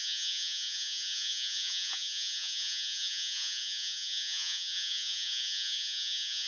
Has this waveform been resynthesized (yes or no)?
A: yes